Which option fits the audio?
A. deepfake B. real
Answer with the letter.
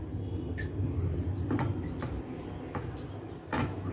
B